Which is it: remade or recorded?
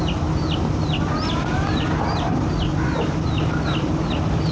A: remade